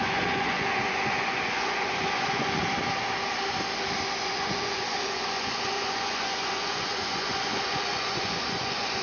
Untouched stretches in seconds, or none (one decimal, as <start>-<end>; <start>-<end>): 2.6-4.2